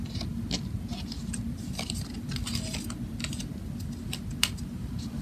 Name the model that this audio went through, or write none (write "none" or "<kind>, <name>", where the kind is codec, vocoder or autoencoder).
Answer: none